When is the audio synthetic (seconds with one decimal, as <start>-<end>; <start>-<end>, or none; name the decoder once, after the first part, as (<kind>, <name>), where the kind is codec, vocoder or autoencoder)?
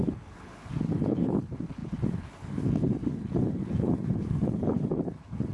0.0-5.5 (codec, HILCodec)